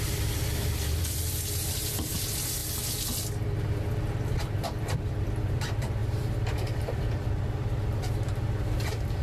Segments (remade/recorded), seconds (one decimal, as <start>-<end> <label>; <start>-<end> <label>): 0.0-2.6 remade; 2.6-3.2 recorded; 3.2-9.2 remade